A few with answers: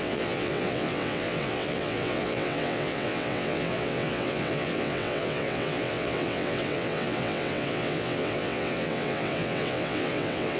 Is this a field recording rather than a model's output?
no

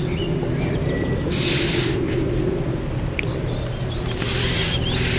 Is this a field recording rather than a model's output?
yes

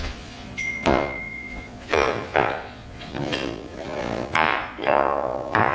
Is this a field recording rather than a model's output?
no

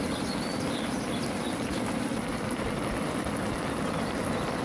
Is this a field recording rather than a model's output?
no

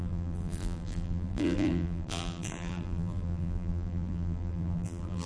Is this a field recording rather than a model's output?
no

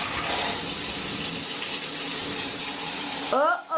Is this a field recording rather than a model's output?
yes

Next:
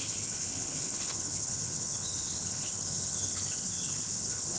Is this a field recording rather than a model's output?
no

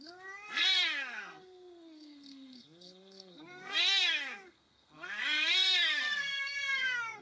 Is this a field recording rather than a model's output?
no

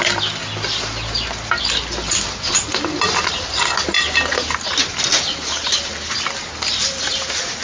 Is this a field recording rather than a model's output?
yes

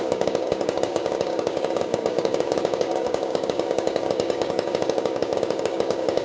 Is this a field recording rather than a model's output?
no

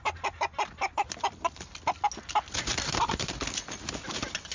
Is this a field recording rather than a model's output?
yes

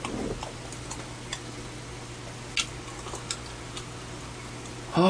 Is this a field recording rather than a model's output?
yes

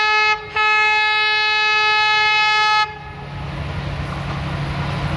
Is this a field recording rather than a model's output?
yes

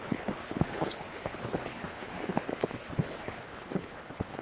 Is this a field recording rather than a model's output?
no